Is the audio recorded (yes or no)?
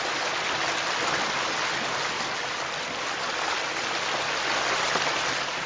yes